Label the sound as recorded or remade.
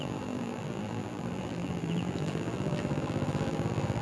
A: remade